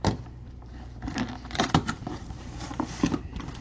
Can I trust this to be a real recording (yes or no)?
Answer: no